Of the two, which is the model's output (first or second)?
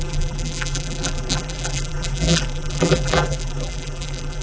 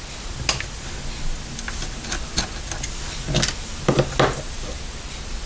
first